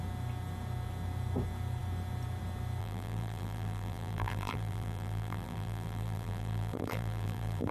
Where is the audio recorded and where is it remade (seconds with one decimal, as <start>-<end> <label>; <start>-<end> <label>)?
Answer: 0.0-2.8 recorded; 2.8-7.7 remade